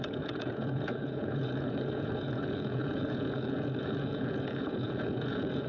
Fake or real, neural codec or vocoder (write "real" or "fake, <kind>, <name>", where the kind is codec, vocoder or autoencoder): fake, vocoder, Vocos